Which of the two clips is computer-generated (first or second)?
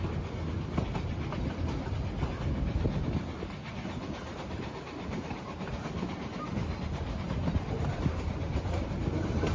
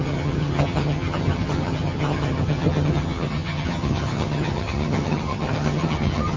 second